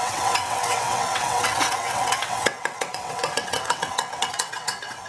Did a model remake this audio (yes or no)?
yes